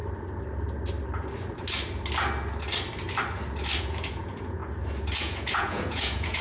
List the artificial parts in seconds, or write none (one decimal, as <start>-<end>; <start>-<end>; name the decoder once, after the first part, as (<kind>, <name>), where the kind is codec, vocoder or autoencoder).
3.8-4.6 (vocoder, Vocos); 5.2-6.4